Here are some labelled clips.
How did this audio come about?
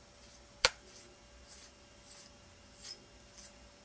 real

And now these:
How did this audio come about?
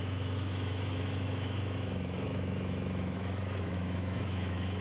fake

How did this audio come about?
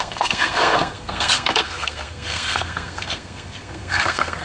fake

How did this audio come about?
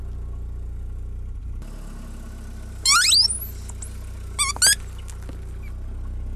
real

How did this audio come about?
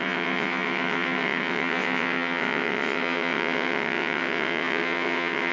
fake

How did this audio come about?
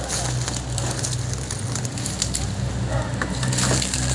real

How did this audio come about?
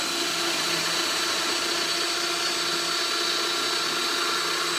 real